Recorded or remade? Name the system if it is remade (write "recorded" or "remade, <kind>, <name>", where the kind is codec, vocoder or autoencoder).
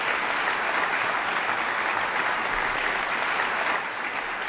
recorded